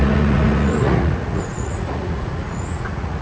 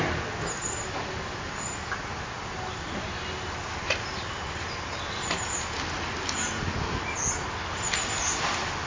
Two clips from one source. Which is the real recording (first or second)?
second